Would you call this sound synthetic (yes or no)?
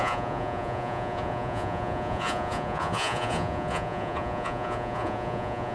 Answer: yes